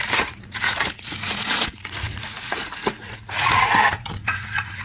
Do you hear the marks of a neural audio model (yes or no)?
yes